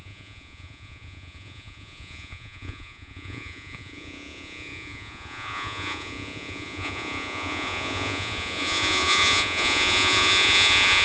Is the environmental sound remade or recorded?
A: remade